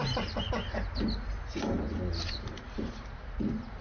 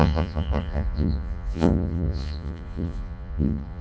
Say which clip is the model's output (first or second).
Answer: second